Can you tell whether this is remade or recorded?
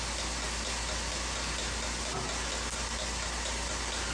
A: recorded